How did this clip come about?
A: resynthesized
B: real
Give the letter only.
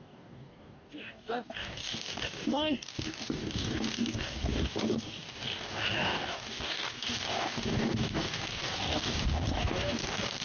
A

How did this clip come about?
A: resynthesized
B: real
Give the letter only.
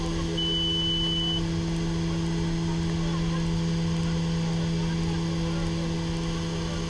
B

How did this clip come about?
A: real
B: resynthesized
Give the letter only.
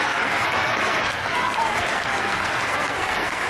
B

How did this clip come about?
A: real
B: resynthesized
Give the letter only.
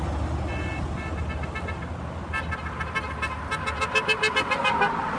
A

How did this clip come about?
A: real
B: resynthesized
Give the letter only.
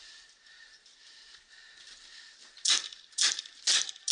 A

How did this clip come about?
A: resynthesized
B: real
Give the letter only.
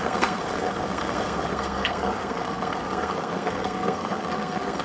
A